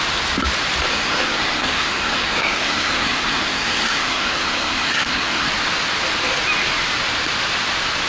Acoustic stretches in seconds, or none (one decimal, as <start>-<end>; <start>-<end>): 0.0-0.9; 5.5-8.1